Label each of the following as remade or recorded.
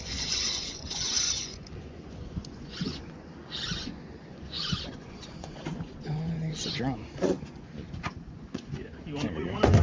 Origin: remade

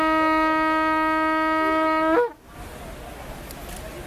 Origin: recorded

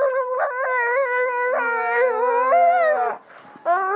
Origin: recorded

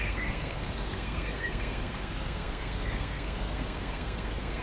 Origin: remade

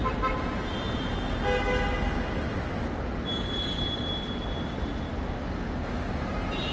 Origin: recorded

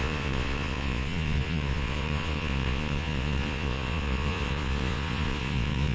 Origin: remade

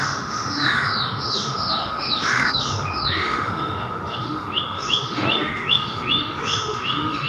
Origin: remade